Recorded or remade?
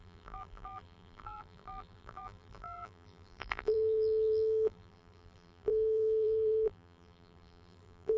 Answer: remade